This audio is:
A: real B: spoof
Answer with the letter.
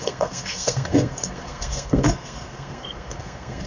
B